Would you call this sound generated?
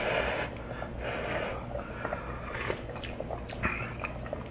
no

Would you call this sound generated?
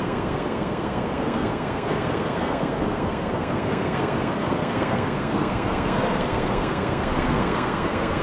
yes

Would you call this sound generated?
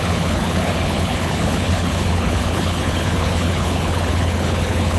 yes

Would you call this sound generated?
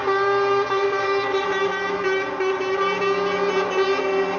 no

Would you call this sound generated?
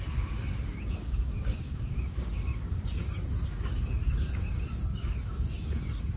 yes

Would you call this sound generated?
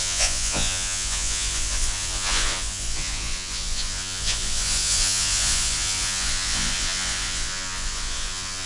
yes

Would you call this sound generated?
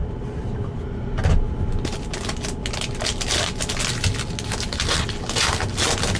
no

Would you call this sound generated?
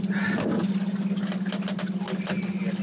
no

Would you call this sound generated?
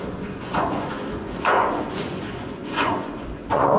yes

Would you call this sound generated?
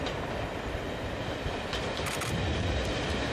no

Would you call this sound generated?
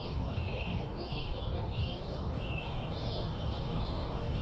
yes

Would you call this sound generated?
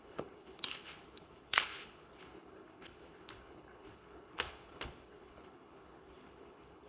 yes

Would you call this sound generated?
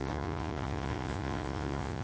yes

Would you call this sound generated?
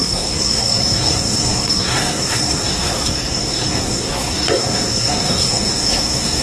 yes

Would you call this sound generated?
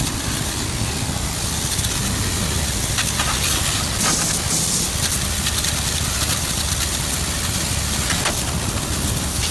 no